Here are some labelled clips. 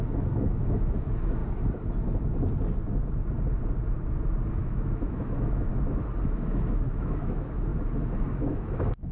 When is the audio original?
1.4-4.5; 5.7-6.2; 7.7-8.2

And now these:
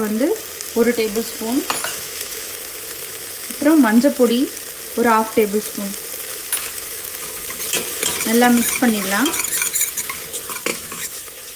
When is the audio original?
0.0-1.8; 4.3-6.3; 7.6-10.7

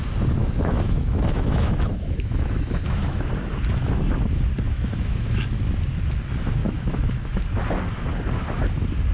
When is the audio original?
0.0-0.4; 3.3-4.7; 5.4-6.6; 7.4-9.1

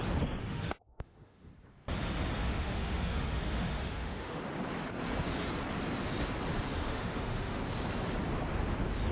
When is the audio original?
0.0-0.4; 1.5-2.4; 4.4-6.8; 7.6-9.1

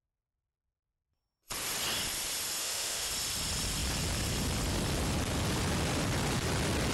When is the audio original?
0.0-2.6; 3.1-6.9

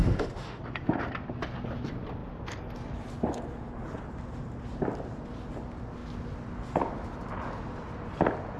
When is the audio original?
0.6-8.6